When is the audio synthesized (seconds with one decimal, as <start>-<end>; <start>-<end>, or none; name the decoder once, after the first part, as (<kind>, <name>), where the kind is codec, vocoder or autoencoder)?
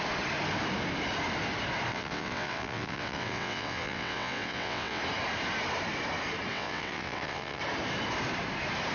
1.9-5.0 (vocoder, WaveNeXt); 6.5-7.6